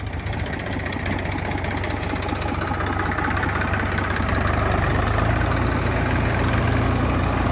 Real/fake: real